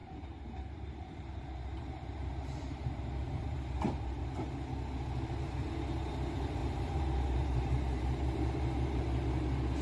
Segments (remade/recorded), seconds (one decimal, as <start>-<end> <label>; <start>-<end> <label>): 0.0-4.2 remade; 4.2-6.6 recorded; 6.6-9.0 remade; 9.0-9.8 recorded